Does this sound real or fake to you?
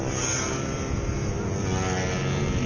real